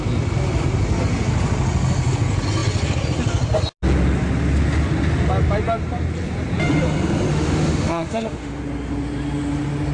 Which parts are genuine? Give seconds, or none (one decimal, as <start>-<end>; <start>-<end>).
0.0-7.3; 8.6-9.9